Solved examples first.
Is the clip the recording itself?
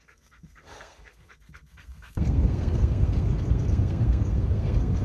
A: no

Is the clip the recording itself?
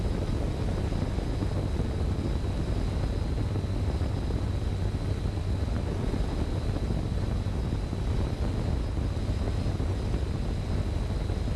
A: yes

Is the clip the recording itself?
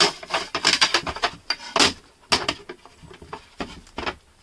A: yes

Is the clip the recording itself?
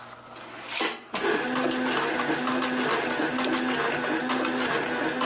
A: yes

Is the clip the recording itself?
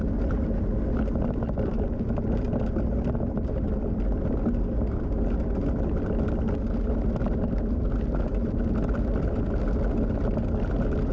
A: yes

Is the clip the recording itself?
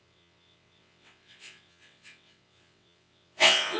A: no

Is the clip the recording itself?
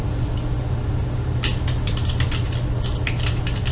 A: yes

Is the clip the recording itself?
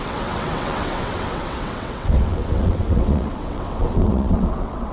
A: no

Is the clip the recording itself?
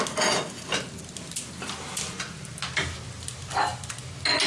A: yes